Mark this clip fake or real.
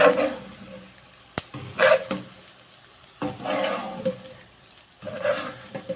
real